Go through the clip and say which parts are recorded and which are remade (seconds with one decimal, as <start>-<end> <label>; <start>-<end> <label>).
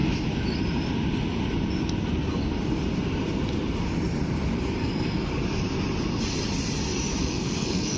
0.0-4.8 recorded; 4.8-5.3 remade; 5.3-7.2 recorded; 7.2-8.0 remade